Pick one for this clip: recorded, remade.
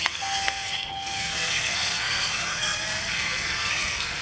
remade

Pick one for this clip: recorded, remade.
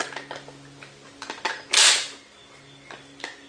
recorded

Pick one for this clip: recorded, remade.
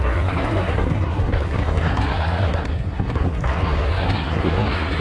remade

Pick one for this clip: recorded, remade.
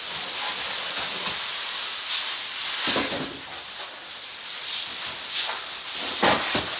recorded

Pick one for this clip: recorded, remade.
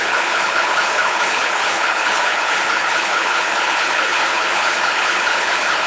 remade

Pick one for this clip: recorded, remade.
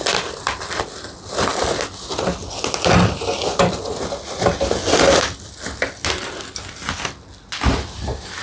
recorded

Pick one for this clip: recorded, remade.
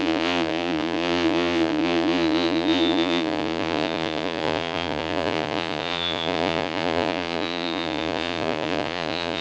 remade